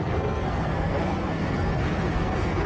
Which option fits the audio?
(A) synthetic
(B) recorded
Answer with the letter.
A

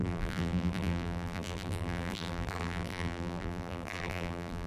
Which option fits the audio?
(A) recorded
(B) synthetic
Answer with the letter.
B